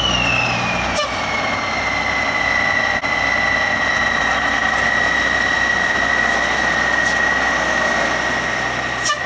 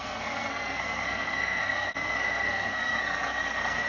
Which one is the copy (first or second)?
second